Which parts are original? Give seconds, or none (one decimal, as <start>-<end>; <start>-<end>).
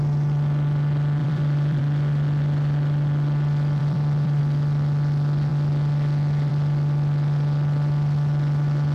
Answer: 0.0-1.2; 1.8-3.8; 4.4-8.9